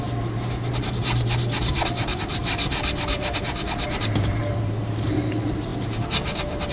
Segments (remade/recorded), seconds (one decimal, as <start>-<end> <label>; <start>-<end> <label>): 0.0-2.4 remade; 2.4-3.1 recorded; 3.1-6.7 remade